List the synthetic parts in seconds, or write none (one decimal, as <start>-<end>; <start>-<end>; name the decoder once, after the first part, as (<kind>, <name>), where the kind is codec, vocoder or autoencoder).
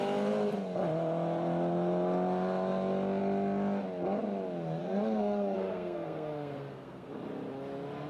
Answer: 4.8-7.1 (codec, SNAC)